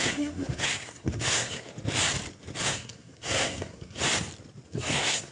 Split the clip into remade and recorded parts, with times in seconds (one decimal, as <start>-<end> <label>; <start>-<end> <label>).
0.0-1.7 remade; 1.7-2.6 recorded; 2.6-4.0 remade; 4.0-4.7 recorded; 4.7-5.3 remade